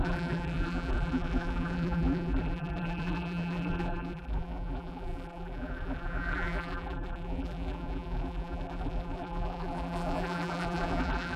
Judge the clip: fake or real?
fake